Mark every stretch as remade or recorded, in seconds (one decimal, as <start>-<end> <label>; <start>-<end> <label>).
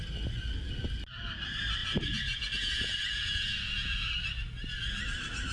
0.0-1.8 recorded; 1.8-4.1 remade; 4.1-5.5 recorded